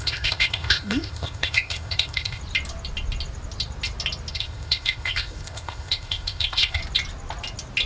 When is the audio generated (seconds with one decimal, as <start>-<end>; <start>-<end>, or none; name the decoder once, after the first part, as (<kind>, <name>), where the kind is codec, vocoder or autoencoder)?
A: 0.0-2.4 (codec, ZipCodec); 4.3-6.8